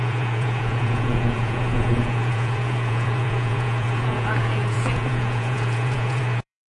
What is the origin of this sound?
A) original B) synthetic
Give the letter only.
B